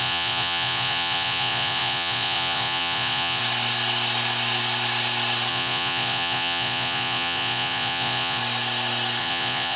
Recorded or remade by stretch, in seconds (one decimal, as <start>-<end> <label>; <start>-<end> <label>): 0.0-3.4 remade; 3.4-5.5 recorded; 5.5-8.4 remade; 8.4-9.2 recorded; 9.2-9.8 remade